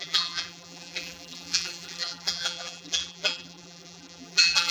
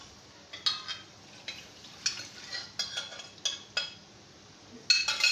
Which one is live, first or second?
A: second